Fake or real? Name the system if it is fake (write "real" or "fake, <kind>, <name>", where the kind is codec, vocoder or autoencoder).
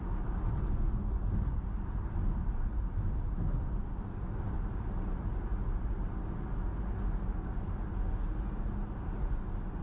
real